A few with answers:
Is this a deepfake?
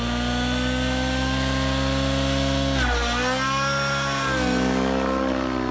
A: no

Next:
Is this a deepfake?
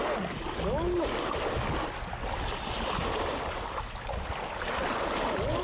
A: no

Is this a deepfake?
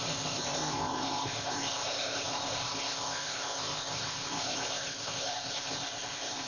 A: yes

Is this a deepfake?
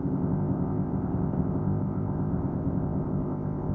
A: yes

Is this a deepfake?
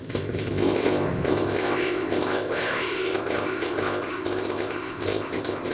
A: yes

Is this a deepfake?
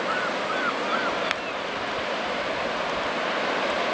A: no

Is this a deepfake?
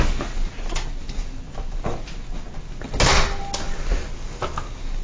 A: no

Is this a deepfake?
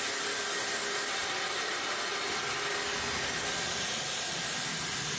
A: no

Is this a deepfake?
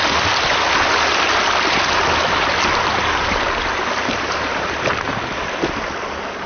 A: no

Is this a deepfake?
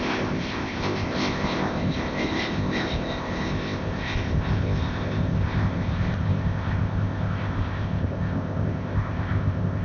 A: yes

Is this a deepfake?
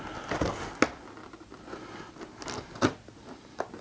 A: no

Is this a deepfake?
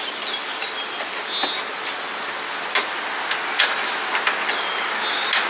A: no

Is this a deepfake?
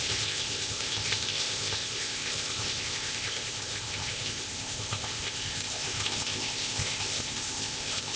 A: yes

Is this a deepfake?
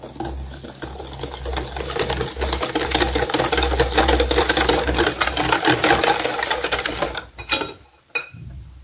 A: no